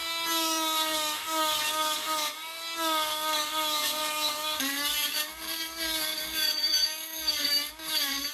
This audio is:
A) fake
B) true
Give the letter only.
A